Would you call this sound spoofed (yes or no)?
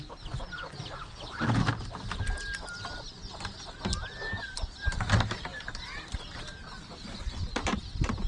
no